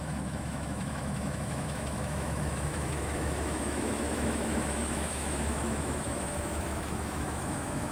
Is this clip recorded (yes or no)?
no